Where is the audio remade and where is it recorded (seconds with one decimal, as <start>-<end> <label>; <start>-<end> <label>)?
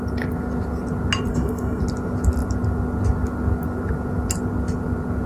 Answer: 0.0-1.3 recorded; 1.3-1.8 remade; 1.8-5.3 recorded